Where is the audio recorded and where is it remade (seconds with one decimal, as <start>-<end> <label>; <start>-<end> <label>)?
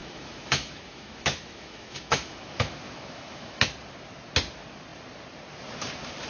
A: 0.0-3.6 remade; 3.6-6.3 recorded